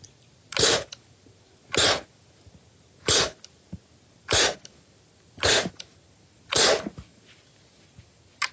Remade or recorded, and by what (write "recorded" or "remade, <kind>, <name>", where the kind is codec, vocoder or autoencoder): recorded